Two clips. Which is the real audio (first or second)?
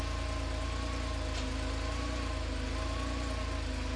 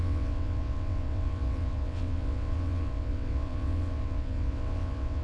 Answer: first